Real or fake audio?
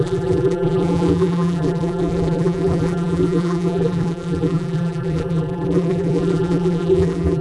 fake